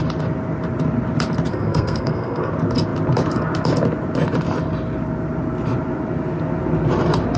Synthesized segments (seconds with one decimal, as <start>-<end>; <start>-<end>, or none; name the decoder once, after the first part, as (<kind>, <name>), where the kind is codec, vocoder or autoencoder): 1.5-2.5 (codec, SNAC)